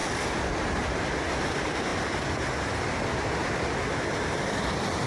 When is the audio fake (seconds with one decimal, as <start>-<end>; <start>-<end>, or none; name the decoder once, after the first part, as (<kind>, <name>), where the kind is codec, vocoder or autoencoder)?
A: none